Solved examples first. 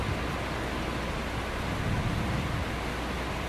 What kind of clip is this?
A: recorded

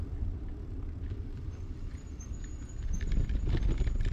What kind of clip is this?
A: remade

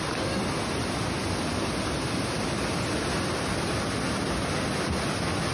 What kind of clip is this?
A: recorded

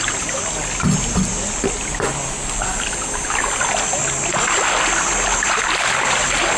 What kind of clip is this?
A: recorded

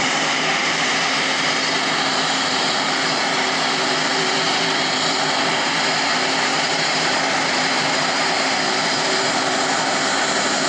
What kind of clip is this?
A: remade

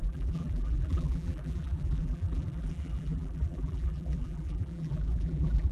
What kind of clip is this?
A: remade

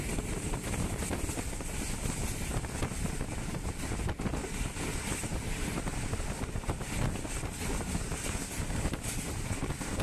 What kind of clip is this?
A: recorded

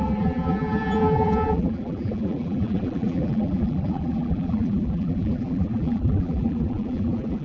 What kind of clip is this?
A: remade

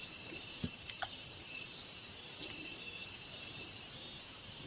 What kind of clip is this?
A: remade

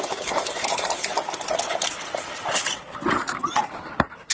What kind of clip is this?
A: remade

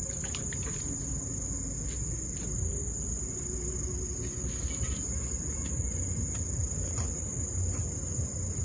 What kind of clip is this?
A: recorded